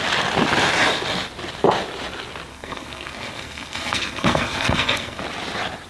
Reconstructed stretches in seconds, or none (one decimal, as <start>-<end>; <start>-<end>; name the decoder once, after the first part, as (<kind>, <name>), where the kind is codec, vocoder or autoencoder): 2.5-5.2 (codec, SNAC)